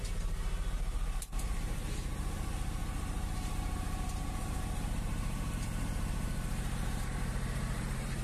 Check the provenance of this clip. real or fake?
fake